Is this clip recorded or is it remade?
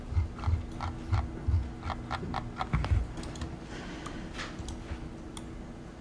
recorded